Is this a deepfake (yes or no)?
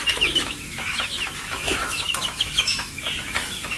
yes